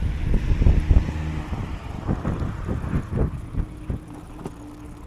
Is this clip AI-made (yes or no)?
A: no